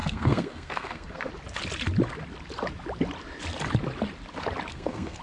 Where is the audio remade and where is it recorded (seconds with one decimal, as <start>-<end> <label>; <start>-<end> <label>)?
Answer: 0.0-1.3 remade; 1.3-4.7 recorded; 4.7-5.2 remade